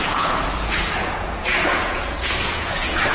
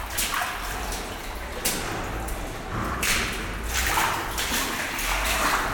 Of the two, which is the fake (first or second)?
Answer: first